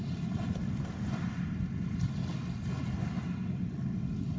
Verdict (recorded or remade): recorded